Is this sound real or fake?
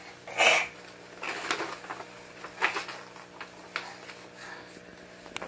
real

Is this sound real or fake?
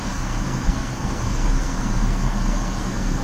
fake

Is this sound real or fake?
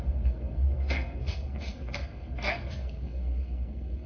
fake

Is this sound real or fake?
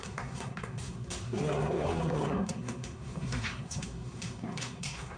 fake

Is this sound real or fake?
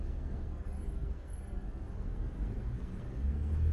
fake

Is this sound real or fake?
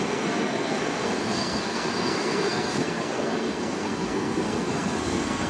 fake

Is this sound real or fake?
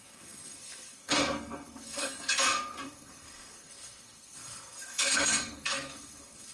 fake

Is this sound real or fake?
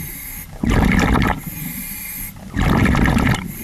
real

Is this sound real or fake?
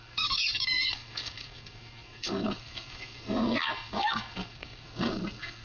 fake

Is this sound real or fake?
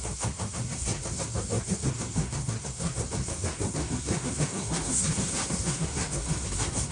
fake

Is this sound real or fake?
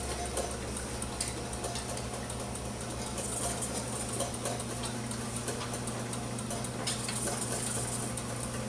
real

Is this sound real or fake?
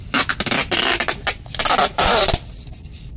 real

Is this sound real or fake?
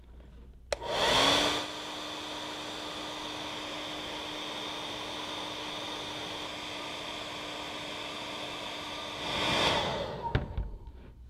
real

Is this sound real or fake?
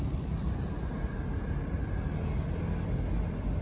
real